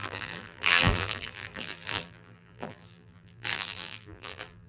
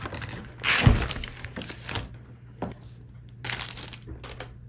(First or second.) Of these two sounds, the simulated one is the first